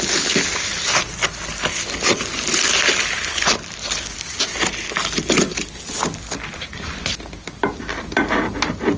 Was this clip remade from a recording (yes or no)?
no